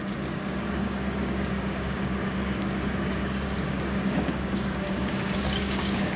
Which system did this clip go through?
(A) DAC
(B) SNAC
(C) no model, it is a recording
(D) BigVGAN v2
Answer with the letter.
A